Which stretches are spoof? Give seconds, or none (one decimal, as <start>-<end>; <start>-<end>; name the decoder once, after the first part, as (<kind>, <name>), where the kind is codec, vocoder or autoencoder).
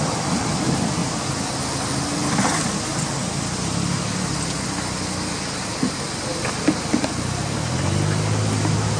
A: none